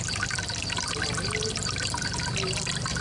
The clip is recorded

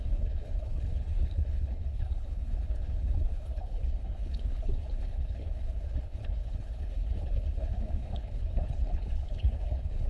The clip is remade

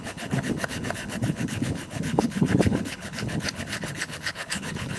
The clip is remade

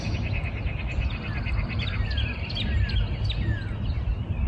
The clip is recorded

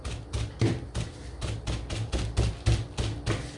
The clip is recorded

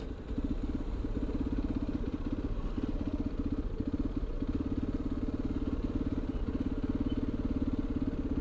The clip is recorded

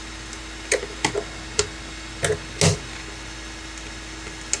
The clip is recorded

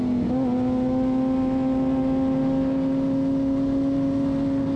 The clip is recorded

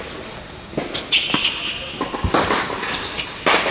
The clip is recorded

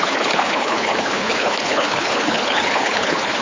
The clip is remade